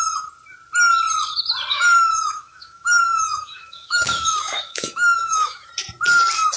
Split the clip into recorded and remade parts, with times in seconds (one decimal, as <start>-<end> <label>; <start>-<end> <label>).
0.0-1.7 recorded; 1.7-5.7 remade; 5.7-6.6 recorded